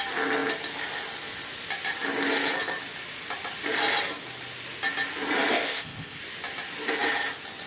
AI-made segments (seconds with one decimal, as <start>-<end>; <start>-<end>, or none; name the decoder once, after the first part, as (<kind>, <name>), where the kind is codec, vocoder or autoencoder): 5.5-6.2 (codec, ZipCodec)